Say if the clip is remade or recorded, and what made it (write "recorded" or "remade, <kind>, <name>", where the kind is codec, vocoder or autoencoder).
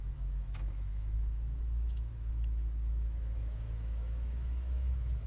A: remade, autoencoder, DAC-VAE